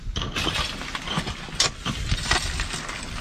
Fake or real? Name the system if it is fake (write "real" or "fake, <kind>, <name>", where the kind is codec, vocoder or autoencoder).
real